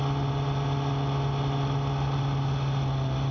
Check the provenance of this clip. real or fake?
real